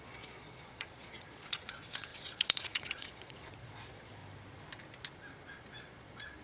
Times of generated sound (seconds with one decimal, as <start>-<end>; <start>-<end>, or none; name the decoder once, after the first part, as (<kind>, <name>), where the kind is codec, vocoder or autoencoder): 0.0-4.2 (vocoder, Vocos); 5.5-6.4